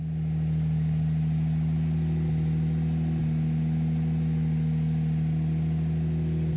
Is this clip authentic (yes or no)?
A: yes